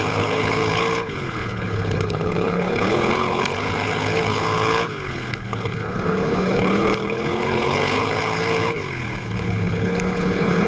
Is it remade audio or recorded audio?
remade